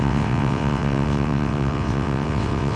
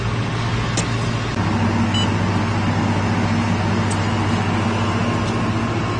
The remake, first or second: first